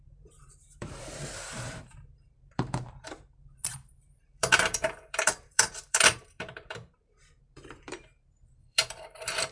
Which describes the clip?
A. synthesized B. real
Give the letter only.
A